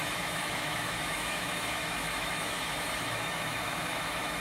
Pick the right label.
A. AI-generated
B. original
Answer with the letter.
A